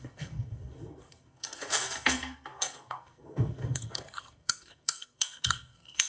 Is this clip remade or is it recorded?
remade